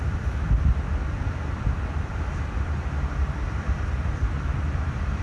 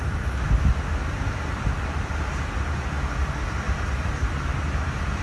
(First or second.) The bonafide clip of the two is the second